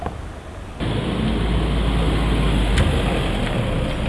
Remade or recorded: recorded